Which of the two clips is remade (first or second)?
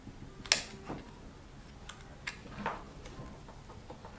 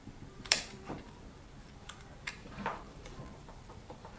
second